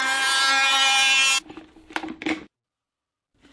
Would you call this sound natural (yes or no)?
yes